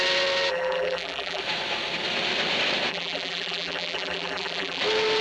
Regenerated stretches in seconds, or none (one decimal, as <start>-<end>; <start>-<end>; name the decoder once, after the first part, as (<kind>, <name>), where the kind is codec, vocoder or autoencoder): 0.5-1.4 (vocoder, BigVGAN v2); 2.9-4.8